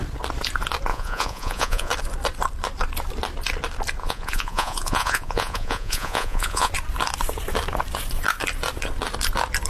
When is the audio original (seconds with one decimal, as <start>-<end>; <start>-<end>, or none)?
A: 0.0-0.9; 1.9-4.0; 6.7-9.7